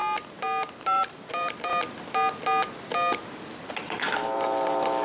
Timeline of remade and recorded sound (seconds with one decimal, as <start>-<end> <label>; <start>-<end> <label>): 0.0-0.8 recorded; 0.8-1.7 remade; 1.7-3.9 recorded; 3.9-5.0 remade